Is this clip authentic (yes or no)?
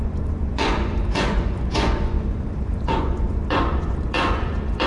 no